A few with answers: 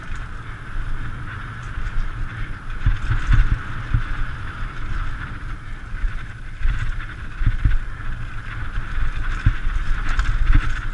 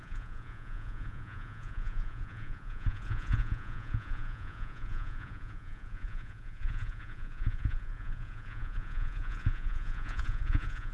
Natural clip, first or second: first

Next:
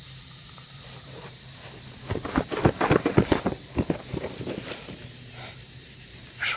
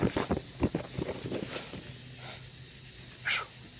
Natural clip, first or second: second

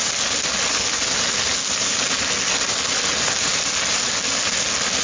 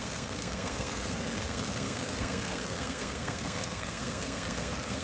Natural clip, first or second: first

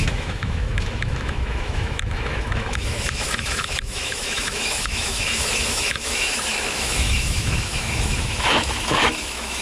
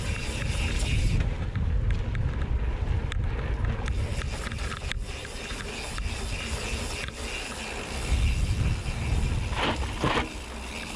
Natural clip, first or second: second